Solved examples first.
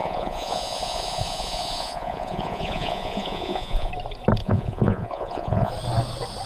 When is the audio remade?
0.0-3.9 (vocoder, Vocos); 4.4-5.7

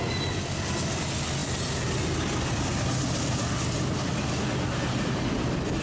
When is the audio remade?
none